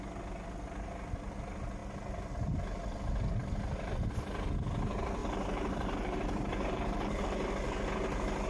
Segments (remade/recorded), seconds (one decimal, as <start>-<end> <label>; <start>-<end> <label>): 0.0-5.2 recorded; 5.2-7.2 remade; 7.2-8.5 recorded